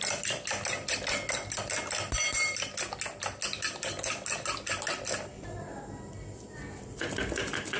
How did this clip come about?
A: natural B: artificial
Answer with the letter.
A